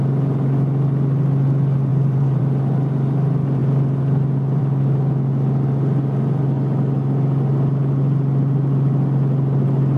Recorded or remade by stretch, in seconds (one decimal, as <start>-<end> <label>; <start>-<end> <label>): 0.0-1.9 recorded; 1.9-2.4 remade; 2.4-10.0 recorded